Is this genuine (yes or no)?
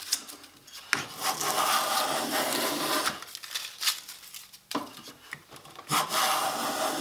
yes